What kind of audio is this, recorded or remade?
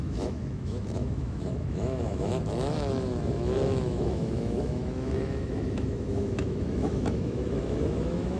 remade